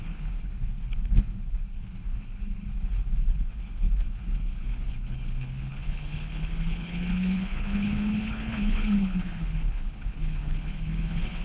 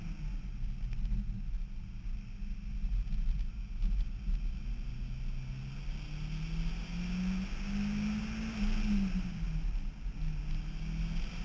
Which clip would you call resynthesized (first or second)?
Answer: first